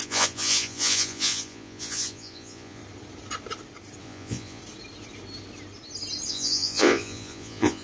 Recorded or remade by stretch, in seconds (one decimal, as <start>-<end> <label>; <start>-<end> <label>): 0.0-2.8 remade; 2.8-4.0 recorded; 4.0-4.6 remade; 4.6-6.3 recorded; 6.3-7.8 remade